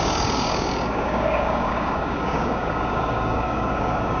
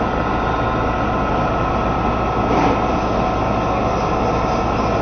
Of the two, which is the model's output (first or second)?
first